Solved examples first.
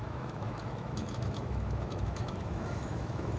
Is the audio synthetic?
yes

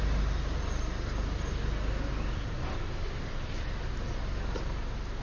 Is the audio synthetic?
no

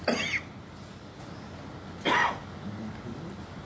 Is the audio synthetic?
no